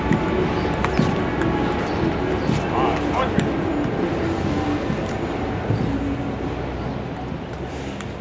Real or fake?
real